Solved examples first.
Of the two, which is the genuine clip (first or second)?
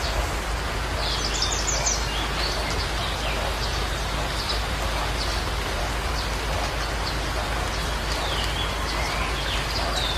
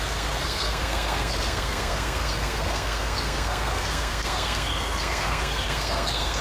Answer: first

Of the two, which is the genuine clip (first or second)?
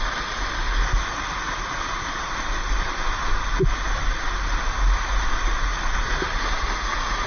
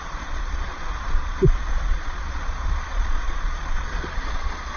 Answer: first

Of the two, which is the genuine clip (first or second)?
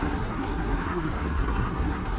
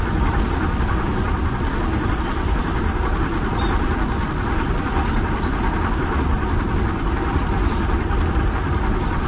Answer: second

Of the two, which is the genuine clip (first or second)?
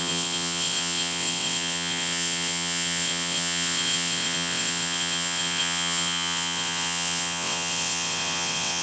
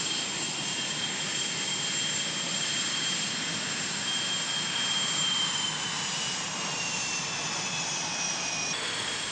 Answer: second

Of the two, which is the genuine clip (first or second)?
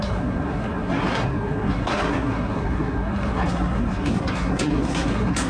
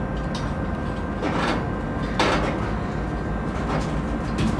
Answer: second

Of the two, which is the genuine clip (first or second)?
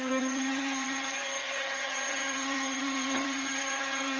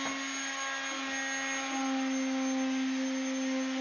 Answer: second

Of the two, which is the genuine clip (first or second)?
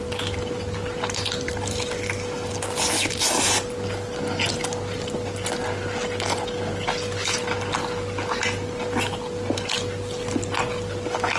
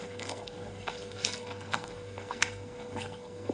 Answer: first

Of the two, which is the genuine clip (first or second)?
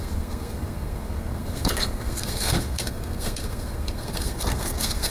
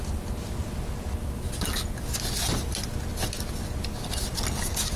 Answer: second